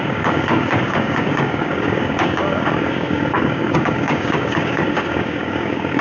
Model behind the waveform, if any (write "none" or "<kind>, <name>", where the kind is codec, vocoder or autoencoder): codec, DAC